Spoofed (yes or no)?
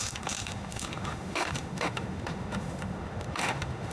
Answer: yes